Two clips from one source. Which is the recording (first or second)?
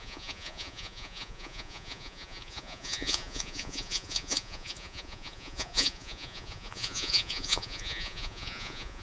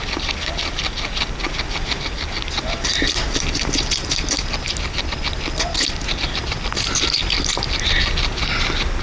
second